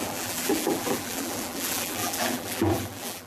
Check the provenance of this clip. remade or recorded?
remade